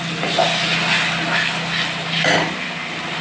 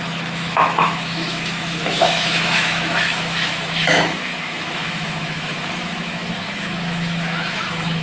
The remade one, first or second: second